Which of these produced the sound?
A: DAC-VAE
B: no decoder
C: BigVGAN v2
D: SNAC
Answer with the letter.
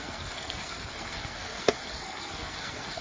D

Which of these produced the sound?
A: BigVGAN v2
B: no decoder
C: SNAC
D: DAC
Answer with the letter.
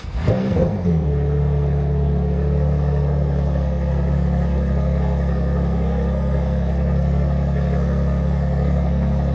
C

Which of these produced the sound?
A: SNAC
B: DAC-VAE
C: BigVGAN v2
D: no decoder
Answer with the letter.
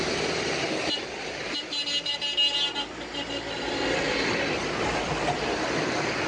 D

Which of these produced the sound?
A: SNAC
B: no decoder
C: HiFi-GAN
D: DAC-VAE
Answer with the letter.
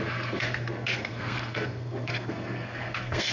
A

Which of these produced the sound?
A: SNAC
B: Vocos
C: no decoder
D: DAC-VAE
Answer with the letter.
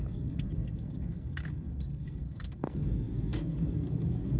A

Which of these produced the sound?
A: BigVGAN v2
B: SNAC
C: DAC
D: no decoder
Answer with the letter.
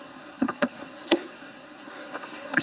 B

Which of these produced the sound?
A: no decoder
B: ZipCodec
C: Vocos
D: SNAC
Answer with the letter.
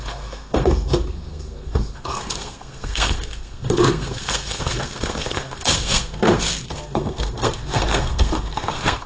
D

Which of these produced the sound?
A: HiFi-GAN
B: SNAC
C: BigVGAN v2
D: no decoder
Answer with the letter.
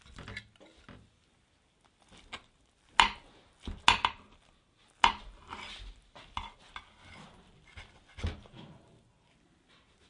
D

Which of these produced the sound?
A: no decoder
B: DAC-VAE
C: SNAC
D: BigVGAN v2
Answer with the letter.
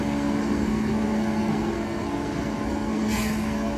C